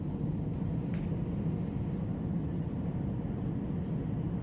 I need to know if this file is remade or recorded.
recorded